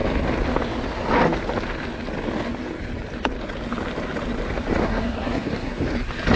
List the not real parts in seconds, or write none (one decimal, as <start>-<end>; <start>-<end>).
4.8-5.8